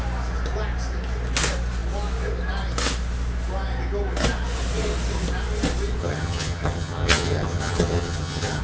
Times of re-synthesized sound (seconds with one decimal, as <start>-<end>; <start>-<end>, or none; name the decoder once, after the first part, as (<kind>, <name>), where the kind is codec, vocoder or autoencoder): 6.0-8.6 (vocoder, HiFi-GAN)

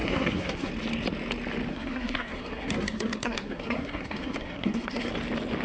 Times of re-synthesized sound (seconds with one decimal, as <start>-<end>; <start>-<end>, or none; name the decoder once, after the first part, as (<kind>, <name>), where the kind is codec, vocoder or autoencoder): 0.0-0.7 (codec, SNAC); 1.7-5.1

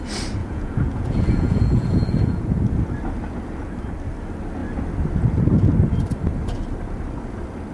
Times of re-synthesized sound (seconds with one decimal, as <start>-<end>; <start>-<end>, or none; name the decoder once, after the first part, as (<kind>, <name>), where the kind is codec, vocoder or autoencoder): 0.4-2.6 (vocoder, Vocos)

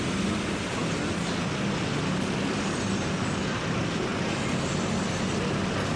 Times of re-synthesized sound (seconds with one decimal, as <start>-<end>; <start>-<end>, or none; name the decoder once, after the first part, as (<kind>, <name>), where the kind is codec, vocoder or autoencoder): none

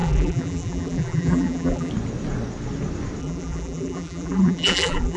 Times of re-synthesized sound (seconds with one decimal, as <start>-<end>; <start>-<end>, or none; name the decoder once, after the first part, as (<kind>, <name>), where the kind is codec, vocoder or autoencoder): 0.0-1.9 (vocoder, BigVGAN v2); 3.2-5.2

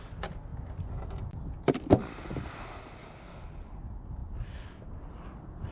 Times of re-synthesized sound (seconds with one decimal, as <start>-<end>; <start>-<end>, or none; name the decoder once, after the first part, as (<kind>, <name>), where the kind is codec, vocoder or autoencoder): none